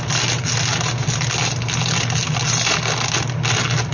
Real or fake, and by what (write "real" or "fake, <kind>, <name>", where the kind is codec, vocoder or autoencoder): real